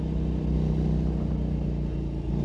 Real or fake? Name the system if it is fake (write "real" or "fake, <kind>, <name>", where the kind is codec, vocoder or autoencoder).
real